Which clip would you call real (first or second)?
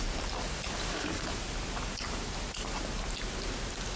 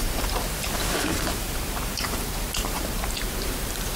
first